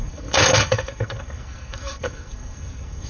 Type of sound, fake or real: fake